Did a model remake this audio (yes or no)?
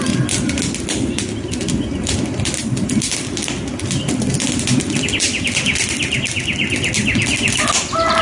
no